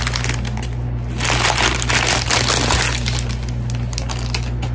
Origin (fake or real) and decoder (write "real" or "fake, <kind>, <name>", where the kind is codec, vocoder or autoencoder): real